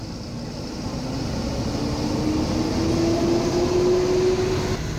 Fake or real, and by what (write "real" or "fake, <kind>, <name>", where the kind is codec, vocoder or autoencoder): real